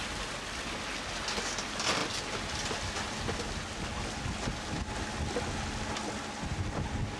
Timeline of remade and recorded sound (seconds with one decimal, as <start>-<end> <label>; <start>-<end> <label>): 0.0-7.2 recorded

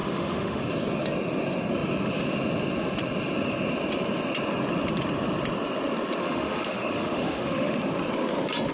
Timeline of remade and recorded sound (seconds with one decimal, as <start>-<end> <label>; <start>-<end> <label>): 0.0-0.6 remade; 0.6-6.2 recorded; 6.2-7.7 remade; 7.7-8.7 recorded

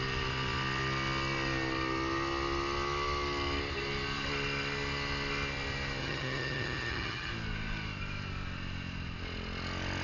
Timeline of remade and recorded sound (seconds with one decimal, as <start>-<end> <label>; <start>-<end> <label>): 0.0-6.0 recorded; 6.0-7.3 remade; 7.3-10.0 recorded

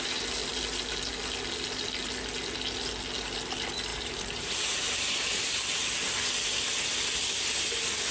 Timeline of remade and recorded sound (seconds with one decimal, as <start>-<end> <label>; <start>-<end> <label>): 0.0-3.9 recorded; 3.9-6.1 remade; 6.1-8.1 recorded